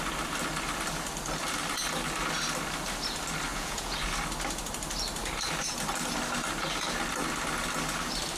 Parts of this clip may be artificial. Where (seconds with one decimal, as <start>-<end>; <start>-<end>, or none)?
3.5-4.0